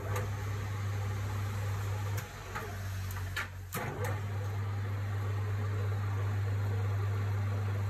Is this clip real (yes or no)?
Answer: yes